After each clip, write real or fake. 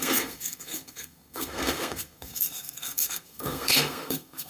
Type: fake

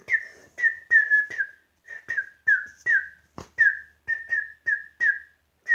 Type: real